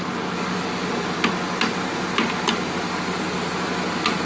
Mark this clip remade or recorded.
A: recorded